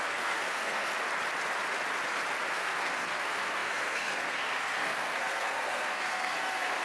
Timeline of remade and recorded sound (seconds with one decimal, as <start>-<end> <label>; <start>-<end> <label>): 0.0-0.9 remade; 0.9-2.5 recorded; 2.5-6.8 remade